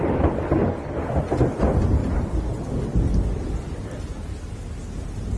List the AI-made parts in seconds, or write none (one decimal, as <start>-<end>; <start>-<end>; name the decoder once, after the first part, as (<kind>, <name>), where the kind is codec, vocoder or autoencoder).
2.0-4.3 (vocoder, BigVGAN v2)